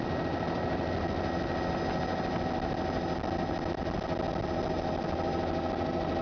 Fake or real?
real